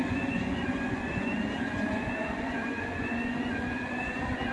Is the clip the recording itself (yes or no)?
no